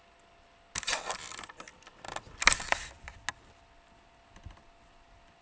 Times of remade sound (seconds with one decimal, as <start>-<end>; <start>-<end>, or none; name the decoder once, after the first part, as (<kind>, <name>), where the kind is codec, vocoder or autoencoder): none